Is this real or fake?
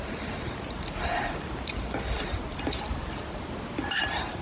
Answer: real